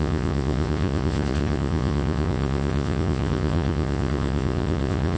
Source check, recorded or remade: remade